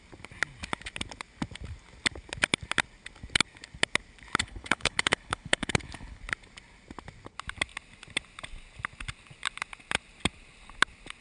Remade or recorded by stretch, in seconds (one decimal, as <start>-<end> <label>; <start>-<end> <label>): 0.0-4.4 recorded; 4.4-6.2 remade; 6.2-11.2 recorded